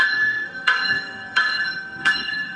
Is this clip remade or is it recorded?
remade